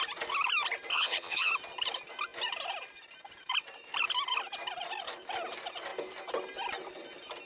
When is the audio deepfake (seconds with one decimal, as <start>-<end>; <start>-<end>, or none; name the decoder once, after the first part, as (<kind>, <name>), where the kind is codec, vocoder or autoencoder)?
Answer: 0.9-1.5 (vocoder, HiFi-GAN)